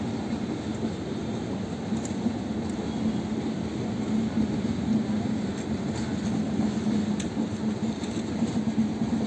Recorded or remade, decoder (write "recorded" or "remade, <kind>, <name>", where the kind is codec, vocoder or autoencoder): recorded